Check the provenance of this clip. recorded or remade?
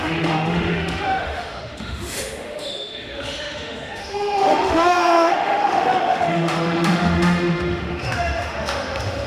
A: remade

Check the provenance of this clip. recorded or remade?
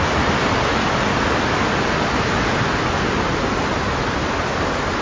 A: recorded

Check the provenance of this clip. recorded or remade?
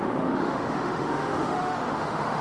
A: remade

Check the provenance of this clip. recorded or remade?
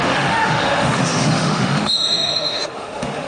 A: remade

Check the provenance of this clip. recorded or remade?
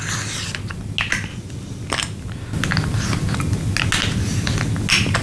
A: recorded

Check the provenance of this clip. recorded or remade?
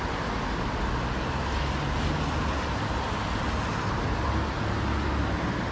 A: recorded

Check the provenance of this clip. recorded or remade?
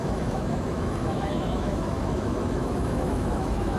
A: remade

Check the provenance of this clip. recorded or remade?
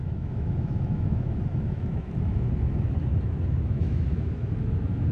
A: remade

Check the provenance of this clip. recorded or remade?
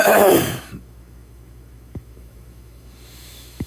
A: remade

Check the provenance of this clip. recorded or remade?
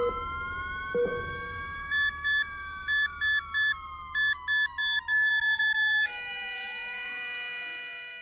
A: remade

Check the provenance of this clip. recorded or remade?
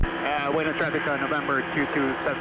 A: recorded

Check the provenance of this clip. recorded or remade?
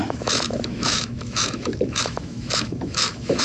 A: remade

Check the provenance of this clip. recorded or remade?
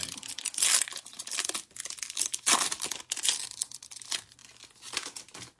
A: recorded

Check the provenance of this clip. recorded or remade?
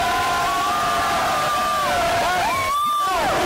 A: recorded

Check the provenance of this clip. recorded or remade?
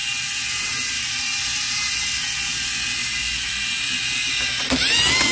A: recorded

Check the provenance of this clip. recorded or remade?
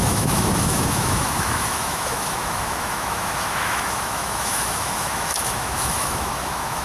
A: remade